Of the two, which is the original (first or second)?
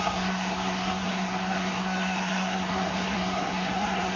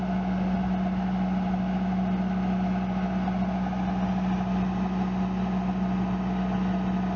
second